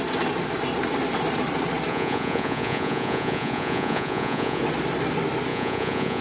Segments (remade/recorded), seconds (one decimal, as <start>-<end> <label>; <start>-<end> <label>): 0.0-1.9 recorded; 1.9-4.6 remade; 4.6-5.5 recorded; 5.5-6.2 remade